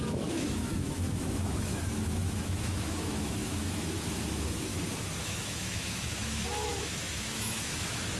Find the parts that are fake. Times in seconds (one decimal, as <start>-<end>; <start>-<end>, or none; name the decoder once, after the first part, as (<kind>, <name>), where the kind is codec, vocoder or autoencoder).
0.0-4.7 (autoencoder, DAC-VAE); 5.2-8.2